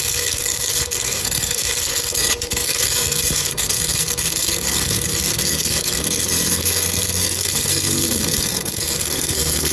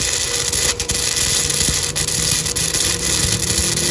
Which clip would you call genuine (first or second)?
second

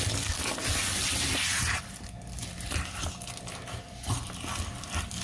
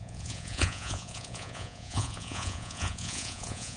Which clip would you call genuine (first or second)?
first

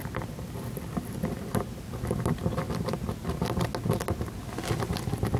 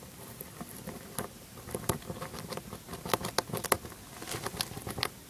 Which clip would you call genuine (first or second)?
first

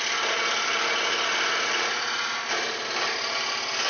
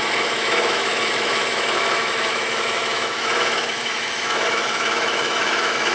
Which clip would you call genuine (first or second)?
first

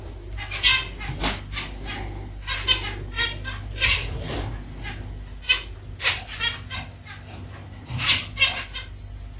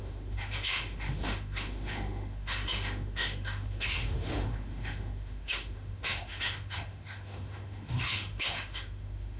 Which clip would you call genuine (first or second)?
first